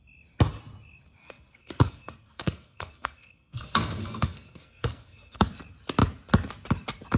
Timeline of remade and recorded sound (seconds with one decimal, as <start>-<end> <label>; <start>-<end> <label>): 0.0-1.2 recorded; 1.2-5.5 remade; 5.5-7.2 recorded